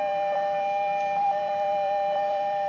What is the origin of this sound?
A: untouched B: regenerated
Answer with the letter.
B